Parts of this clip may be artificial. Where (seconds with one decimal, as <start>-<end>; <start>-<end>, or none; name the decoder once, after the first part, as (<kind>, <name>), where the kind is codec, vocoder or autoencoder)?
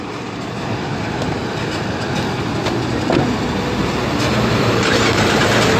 0.0-1.4 (vocoder, BigVGAN v2); 4.3-5.8